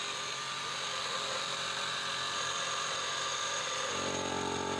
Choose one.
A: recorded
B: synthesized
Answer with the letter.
B